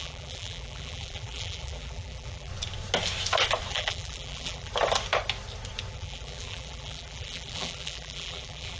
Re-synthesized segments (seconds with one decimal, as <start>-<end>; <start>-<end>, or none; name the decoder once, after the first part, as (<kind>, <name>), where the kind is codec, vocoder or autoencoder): 0.0-2.5 (vocoder, BigVGAN v2); 3.7-4.7; 5.9-8.8